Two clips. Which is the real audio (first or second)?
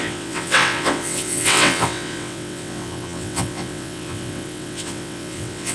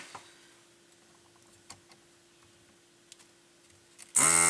second